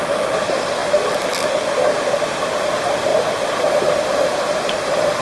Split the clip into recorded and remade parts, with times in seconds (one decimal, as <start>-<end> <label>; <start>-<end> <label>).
0.0-5.2 recorded